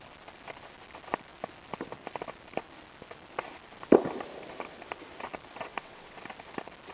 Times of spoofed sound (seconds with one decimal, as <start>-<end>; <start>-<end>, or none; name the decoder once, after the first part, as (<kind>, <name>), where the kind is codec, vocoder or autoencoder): 5.7-6.2 (vocoder, WaveNeXt)